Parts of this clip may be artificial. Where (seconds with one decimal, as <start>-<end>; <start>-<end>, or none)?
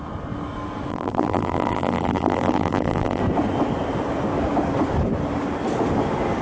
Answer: 0.9-3.2